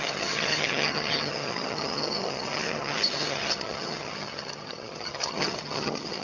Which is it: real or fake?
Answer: fake